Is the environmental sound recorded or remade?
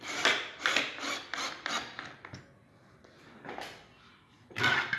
recorded